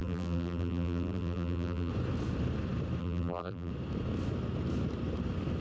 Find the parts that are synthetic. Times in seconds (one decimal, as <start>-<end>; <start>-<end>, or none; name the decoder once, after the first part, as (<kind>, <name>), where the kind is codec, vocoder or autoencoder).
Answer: 0.0-1.9 (vocoder, BigVGAN v2); 3.0-3.7